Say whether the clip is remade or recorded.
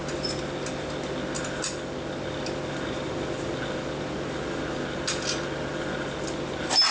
recorded